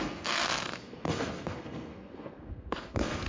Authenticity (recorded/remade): remade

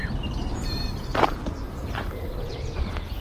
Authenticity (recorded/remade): remade